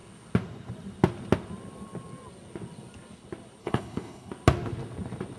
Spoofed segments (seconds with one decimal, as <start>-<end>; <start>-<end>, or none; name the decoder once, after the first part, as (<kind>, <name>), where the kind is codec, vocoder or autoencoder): 3.6-4.3 (codec, HILCodec)